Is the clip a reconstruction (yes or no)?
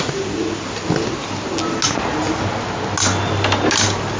no